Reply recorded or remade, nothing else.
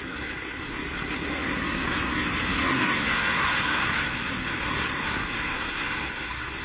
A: remade